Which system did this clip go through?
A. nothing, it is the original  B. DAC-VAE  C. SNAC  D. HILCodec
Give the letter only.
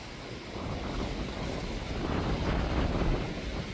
A